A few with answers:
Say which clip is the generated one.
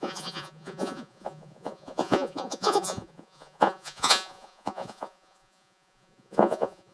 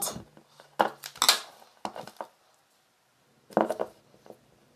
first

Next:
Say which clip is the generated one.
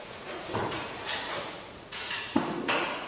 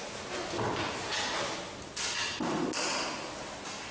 first